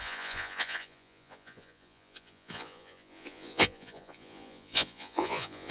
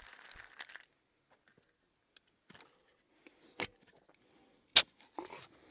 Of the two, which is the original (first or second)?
second